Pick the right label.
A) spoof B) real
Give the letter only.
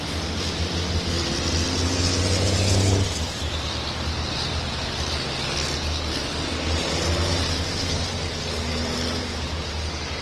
B